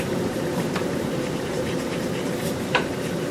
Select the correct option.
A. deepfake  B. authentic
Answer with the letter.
A